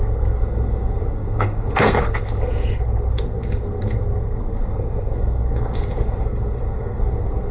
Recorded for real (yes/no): no